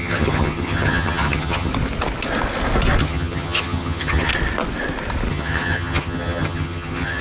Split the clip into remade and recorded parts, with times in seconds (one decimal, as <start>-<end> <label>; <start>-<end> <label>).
0.0-1.7 remade; 1.7-3.0 recorded; 3.0-4.3 remade; 4.3-5.3 recorded; 5.3-7.2 remade